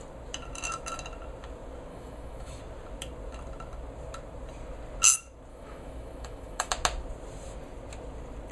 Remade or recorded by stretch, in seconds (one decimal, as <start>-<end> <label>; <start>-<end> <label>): 0.0-1.9 recorded; 1.9-2.6 remade; 2.6-5.5 recorded; 5.5-6.7 remade; 6.7-8.5 recorded